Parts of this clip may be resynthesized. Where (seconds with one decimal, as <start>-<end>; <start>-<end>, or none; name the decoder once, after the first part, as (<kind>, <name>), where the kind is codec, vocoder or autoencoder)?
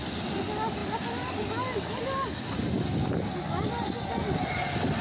none